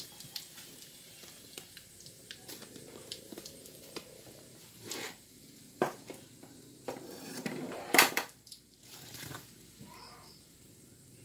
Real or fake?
fake